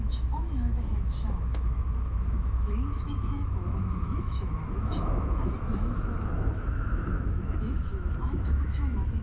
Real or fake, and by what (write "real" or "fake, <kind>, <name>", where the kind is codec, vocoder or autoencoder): fake, autoencoder, DAC-VAE